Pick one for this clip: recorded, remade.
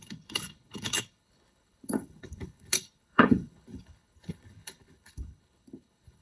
remade